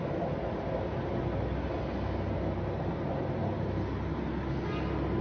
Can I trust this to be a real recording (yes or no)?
yes